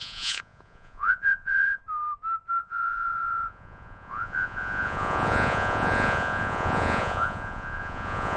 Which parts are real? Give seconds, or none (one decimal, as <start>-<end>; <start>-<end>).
1.8-2.6